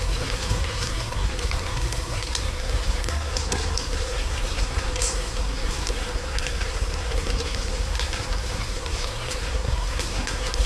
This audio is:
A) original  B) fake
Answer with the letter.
B